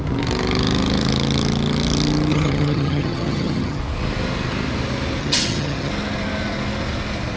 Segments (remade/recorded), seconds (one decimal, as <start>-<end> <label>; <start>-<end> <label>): 0.0-2.3 recorded; 2.3-3.8 remade; 3.8-5.2 recorded; 5.2-5.9 remade; 5.9-7.4 recorded